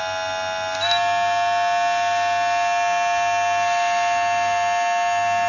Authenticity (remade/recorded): recorded